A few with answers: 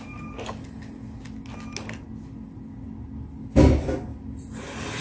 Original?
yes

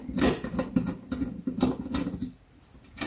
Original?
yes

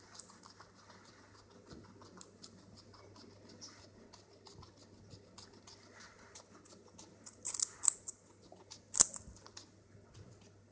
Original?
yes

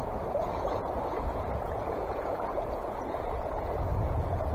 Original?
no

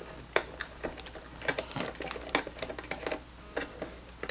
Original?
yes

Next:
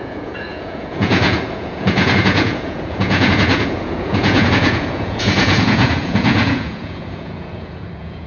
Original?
no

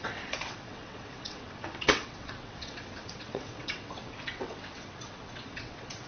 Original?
no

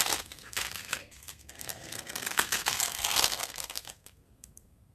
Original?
no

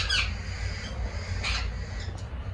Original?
yes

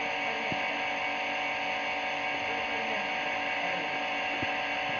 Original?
yes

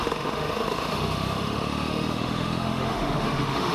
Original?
no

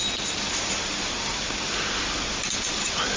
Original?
yes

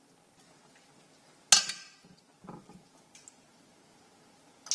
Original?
yes